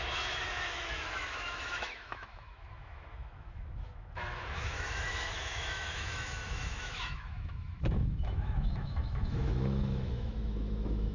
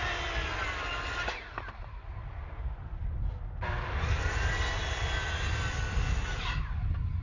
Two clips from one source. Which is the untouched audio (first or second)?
second